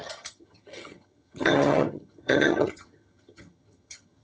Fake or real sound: fake